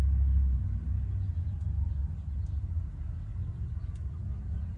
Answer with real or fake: real